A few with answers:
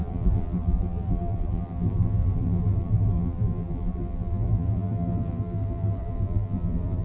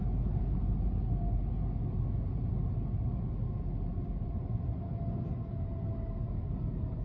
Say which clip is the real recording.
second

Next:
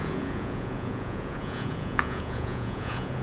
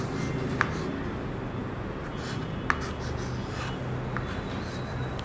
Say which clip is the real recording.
second